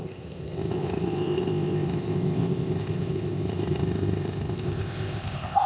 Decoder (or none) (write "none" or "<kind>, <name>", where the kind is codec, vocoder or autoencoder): codec, ZipCodec